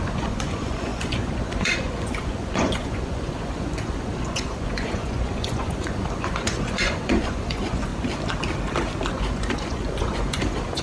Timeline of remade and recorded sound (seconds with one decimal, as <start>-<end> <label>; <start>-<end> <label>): 0.0-7.9 remade; 7.9-9.1 recorded; 9.1-10.8 remade